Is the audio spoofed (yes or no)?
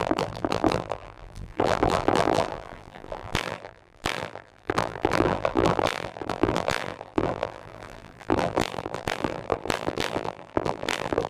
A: yes